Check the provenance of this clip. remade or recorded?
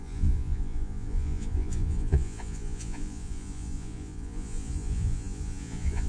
remade